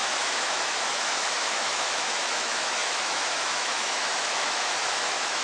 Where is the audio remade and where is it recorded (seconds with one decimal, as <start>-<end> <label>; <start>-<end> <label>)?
0.0-5.4 remade